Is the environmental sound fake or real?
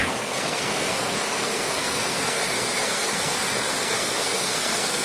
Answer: fake